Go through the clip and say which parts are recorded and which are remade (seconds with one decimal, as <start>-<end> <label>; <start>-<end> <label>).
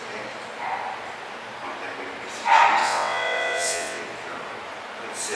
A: 0.0-2.8 recorded; 2.8-4.0 remade; 4.0-5.4 recorded